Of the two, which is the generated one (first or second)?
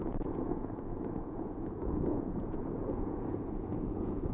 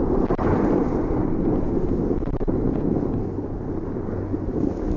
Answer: first